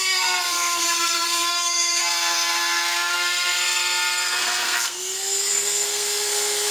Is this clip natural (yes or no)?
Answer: no